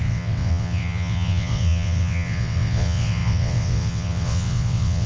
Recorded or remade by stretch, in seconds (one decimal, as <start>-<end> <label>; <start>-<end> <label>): 0.0-5.1 remade